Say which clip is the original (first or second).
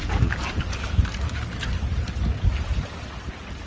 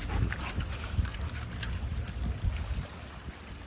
second